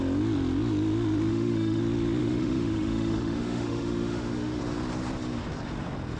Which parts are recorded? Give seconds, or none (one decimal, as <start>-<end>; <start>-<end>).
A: 0.0-1.3; 1.8-2.2; 4.6-6.2